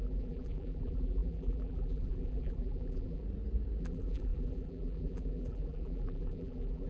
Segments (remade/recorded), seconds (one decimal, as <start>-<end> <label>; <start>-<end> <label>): 0.0-3.2 remade; 3.2-3.8 recorded; 3.8-6.9 remade